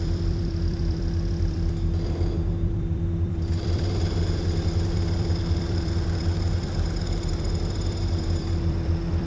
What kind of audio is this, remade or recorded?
remade